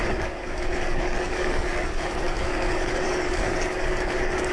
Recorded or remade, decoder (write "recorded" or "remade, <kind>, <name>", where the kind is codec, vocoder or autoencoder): remade, codec, DAC